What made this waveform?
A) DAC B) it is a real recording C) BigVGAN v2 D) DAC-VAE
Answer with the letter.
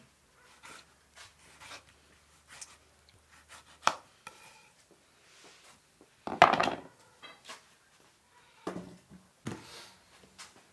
B